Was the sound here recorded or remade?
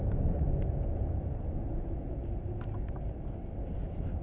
recorded